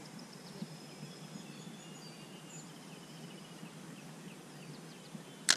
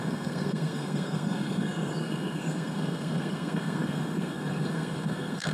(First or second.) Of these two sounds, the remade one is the second